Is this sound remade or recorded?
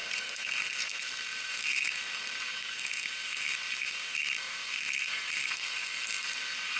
remade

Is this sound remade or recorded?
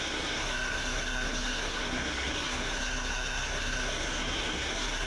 remade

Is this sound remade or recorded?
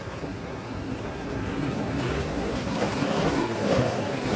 remade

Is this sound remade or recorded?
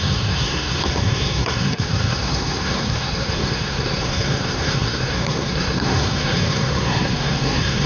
remade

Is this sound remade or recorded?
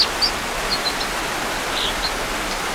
recorded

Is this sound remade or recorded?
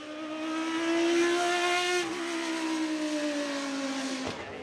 recorded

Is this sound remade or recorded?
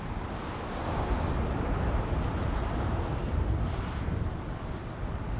recorded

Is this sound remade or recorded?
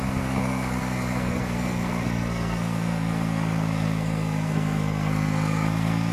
remade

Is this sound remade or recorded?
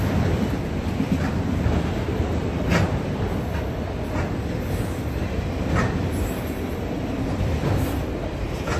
recorded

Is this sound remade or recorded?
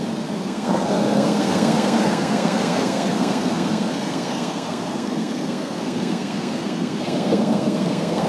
remade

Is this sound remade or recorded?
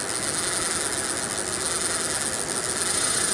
recorded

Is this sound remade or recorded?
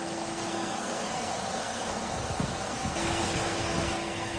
remade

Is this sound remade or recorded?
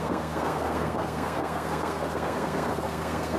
remade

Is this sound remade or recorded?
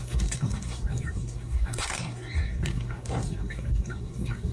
remade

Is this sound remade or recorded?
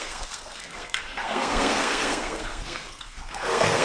remade